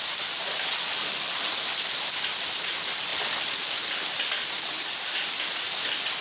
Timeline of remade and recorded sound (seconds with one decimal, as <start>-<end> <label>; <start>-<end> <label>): 0.0-6.2 recorded

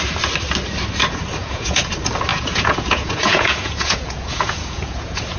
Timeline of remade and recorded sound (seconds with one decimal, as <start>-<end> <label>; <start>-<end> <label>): 0.0-1.4 recorded; 1.4-1.9 remade; 1.9-2.3 recorded; 2.3-5.4 remade